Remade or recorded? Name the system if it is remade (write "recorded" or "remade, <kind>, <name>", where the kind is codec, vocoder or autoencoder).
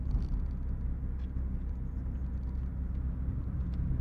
recorded